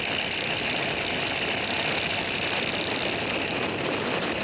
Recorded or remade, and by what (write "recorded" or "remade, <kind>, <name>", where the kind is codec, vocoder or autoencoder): recorded